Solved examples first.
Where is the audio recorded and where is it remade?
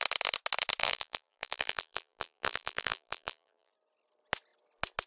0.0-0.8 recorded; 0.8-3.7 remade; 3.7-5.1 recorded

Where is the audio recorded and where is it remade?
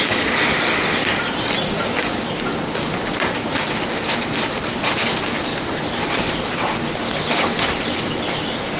0.0-5.5 recorded; 5.5-8.0 remade; 8.0-8.8 recorded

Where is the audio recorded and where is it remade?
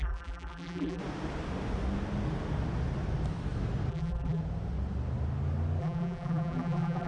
0.0-1.0 remade; 1.0-3.9 recorded; 3.9-4.4 remade; 4.4-5.8 recorded; 5.8-7.1 remade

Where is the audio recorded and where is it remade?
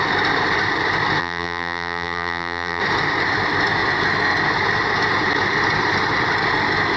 0.0-1.2 recorded; 1.2-2.8 remade; 2.8-7.0 recorded